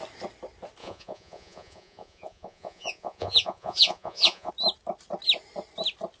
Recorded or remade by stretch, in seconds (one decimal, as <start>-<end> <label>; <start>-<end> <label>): 0.0-0.8 recorded; 0.8-4.5 remade; 4.5-6.2 recorded